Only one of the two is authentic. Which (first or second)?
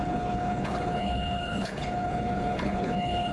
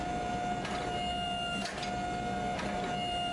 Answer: second